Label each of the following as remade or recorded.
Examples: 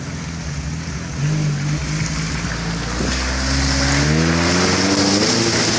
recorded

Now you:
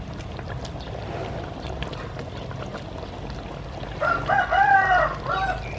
recorded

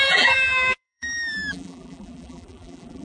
remade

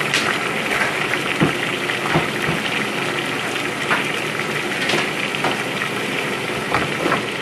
recorded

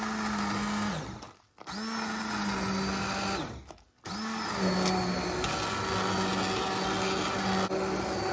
recorded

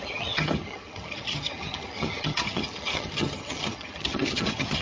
remade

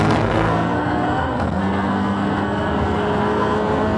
remade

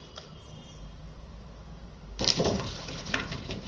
remade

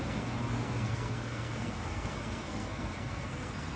remade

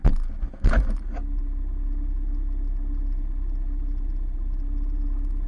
recorded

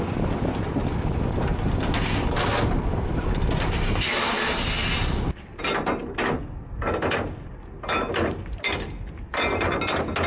recorded